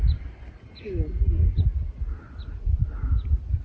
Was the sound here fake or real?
real